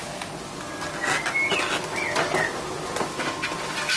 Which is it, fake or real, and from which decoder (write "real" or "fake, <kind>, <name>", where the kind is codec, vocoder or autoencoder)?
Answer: real